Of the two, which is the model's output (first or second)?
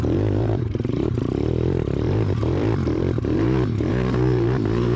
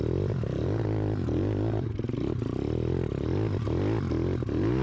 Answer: first